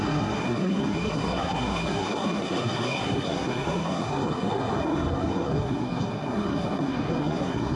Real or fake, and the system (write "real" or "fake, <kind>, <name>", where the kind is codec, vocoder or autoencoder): fake, codec, SNAC